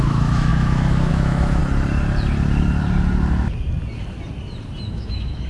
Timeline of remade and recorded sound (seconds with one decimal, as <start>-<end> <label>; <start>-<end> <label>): 0.0-1.6 remade; 1.6-4.9 recorded; 4.9-5.5 remade